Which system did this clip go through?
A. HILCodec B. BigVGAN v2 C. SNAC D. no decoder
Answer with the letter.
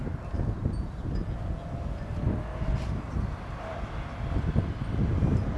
D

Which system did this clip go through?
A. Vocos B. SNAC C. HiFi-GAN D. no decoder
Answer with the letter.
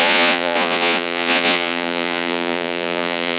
A